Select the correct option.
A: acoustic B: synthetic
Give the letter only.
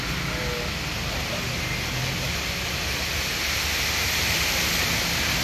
A